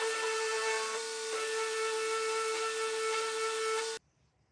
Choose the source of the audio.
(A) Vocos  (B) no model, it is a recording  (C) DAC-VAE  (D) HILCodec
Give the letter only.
B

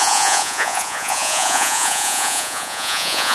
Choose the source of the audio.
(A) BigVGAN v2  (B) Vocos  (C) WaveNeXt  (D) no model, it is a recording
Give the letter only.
B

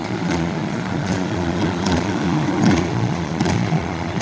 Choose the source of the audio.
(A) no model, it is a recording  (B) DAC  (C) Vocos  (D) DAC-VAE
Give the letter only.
C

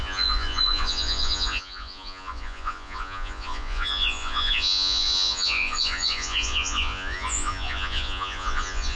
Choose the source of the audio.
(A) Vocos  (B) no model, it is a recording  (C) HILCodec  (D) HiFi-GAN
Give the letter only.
A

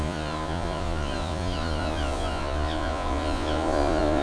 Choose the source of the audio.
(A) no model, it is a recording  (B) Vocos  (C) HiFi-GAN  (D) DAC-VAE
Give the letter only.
B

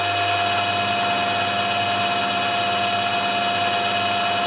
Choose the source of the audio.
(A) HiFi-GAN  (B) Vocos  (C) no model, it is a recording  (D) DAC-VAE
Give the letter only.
C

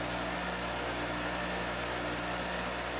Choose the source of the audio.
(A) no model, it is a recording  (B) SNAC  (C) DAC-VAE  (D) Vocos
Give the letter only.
A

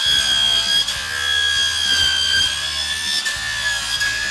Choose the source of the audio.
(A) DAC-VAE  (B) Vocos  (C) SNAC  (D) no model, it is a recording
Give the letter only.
D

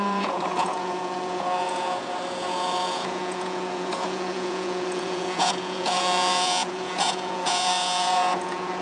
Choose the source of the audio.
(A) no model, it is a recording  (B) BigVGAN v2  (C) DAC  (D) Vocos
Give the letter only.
D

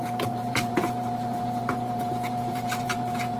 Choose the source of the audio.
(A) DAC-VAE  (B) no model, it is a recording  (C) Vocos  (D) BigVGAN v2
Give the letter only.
C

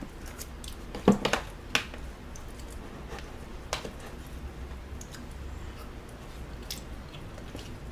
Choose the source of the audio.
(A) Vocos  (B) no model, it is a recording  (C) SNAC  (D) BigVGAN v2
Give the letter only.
B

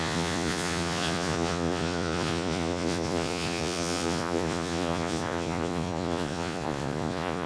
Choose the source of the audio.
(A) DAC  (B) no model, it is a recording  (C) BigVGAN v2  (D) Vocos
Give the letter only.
D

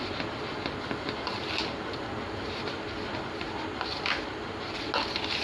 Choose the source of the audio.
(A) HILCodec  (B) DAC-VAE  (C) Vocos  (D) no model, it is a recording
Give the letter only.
D